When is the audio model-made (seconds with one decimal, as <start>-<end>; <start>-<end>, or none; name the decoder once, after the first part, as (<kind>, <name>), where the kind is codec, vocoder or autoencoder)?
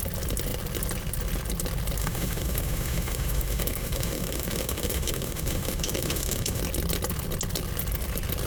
2.0-6.6 (autoencoder, DAC-VAE)